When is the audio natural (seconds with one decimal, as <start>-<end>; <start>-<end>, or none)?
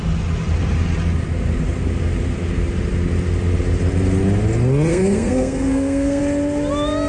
0.0-4.9; 6.2-7.1